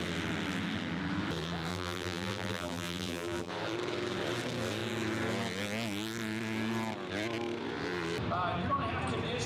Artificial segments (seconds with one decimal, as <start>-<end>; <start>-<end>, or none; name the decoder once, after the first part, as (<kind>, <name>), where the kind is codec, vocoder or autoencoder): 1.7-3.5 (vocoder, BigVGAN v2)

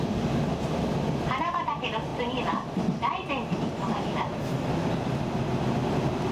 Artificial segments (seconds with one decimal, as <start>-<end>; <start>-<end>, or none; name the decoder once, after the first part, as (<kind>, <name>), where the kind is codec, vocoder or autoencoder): none

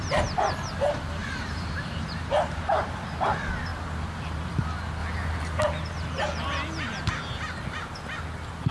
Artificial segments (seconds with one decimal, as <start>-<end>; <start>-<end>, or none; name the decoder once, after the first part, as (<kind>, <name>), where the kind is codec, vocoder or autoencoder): 1.2-3.0 (vocoder, BigVGAN v2)

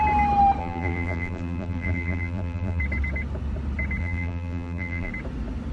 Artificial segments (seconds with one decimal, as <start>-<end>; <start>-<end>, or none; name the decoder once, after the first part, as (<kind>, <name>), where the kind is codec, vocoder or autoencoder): 0.6-2.8 (vocoder, BigVGAN v2); 4.0-5.1

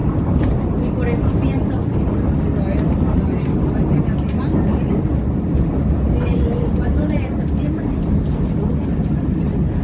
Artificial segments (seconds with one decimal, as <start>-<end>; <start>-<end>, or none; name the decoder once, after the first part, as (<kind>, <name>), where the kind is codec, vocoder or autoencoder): 6.3-7.2 (vocoder, BigVGAN v2)

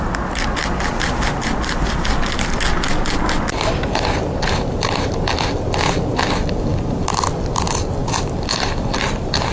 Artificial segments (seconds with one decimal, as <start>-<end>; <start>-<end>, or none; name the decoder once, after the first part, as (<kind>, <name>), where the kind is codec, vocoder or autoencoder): none

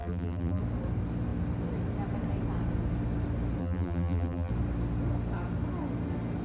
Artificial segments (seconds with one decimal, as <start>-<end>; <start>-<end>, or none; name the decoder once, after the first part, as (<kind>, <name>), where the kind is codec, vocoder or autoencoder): 0.0-0.6 (vocoder, BigVGAN v2); 3.6-4.5